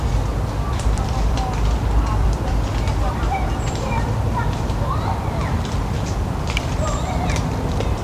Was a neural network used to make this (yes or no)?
yes